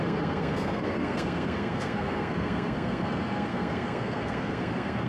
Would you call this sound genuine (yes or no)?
no